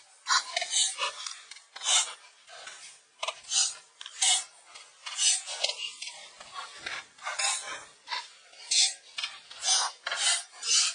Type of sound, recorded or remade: recorded